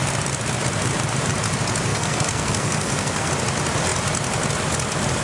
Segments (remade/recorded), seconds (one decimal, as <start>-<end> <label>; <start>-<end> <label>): 0.0-1.9 recorded; 1.9-3.3 remade; 3.3-5.2 recorded